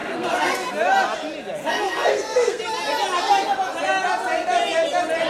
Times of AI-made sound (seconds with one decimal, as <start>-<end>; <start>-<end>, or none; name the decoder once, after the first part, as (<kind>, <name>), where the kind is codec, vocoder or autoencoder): 0.0-0.7 (codec, SNAC); 1.6-2.6